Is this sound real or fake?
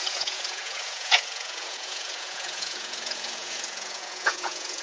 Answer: fake